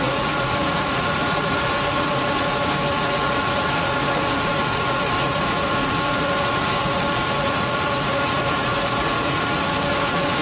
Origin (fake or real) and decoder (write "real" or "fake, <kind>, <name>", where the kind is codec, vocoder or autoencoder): fake, vocoder, Vocos